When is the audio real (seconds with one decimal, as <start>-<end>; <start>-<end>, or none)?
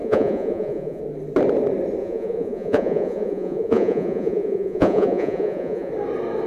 1.0-2.0; 5.9-6.5